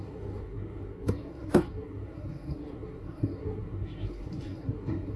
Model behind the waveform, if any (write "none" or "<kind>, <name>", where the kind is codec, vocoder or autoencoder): codec, SNAC